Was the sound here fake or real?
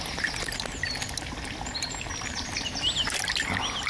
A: real